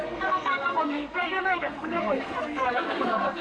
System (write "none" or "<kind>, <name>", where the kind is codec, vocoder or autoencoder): codec, SNAC